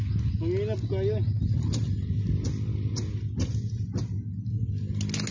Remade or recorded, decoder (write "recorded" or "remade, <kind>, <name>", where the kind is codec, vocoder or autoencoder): recorded